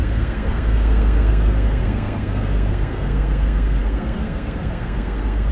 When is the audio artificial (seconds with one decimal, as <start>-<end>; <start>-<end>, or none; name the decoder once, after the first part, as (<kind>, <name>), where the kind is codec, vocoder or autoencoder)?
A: 0.0-5.5 (codec, SNAC)